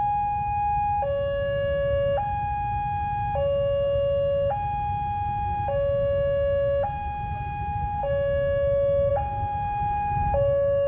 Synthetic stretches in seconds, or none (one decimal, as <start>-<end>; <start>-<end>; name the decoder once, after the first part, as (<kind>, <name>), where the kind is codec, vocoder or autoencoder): none